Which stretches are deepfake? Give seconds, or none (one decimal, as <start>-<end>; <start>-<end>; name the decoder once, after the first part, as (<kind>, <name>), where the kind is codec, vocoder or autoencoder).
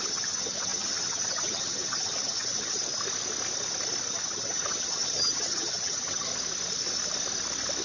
0.0-2.8 (vocoder, HiFi-GAN); 4.1-6.3